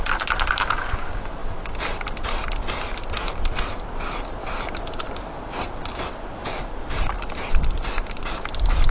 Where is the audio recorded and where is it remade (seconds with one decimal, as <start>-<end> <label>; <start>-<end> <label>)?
0.0-8.9 recorded